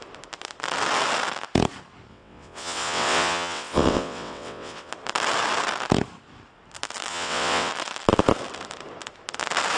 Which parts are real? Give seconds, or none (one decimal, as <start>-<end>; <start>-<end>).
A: 0.0-2.1; 4.9-7.1; 7.7-9.8